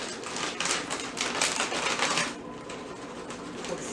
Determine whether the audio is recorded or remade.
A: recorded